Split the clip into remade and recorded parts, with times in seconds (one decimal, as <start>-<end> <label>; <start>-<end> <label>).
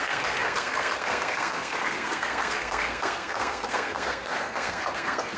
0.0-5.4 remade